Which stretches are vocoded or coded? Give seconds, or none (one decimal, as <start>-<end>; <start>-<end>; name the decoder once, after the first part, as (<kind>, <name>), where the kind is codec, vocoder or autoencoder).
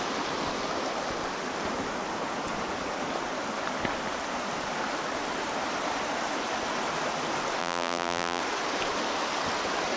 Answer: 7.6-8.4 (vocoder, BigVGAN v2)